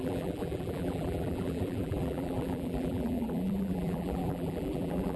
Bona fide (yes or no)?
no